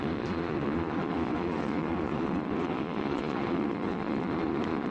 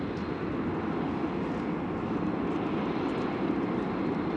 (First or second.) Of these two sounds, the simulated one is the first